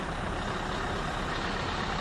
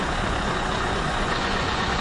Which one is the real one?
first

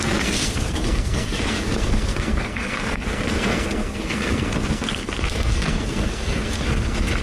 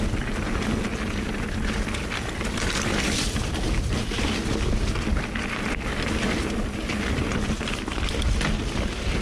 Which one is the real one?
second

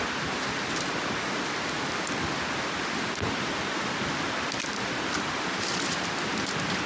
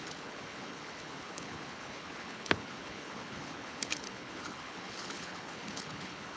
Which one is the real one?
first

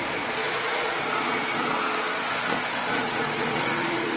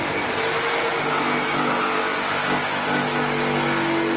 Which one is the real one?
second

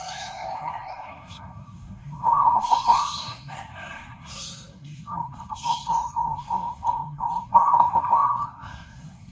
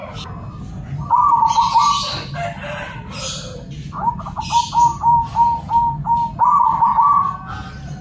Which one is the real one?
second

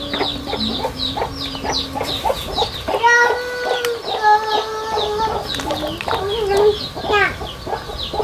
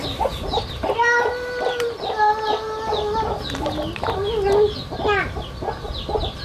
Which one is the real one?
first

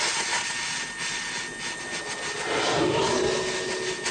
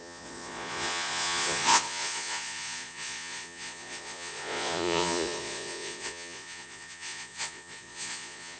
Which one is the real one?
first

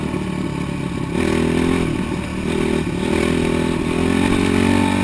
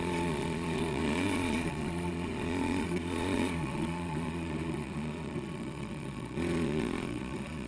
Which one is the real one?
first